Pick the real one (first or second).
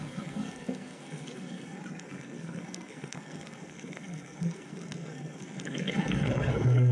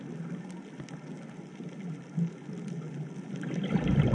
second